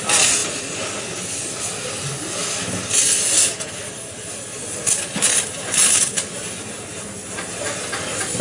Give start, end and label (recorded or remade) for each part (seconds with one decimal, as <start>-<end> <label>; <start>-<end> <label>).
0.0-8.4 recorded